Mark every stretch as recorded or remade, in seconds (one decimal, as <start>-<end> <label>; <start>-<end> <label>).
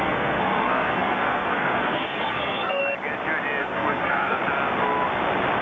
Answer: 0.0-2.8 remade; 2.8-3.6 recorded; 3.6-4.4 remade; 4.4-5.6 recorded